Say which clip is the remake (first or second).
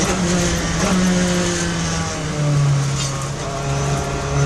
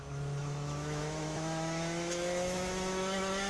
second